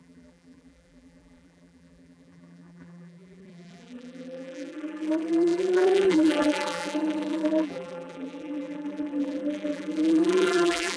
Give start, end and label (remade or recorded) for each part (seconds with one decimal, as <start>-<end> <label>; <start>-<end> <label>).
0.0-11.0 remade